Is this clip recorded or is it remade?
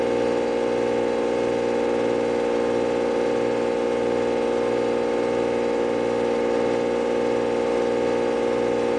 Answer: recorded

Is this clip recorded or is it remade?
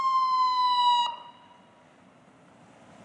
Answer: recorded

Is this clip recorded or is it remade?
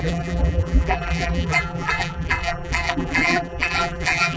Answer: remade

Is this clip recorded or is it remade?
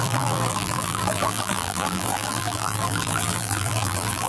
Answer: remade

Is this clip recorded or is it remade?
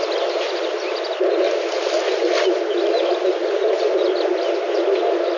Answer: recorded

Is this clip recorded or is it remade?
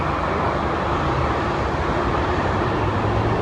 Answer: recorded